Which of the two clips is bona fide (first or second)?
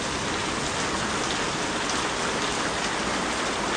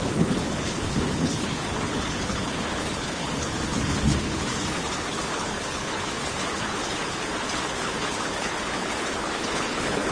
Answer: first